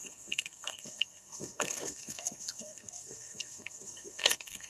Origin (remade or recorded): remade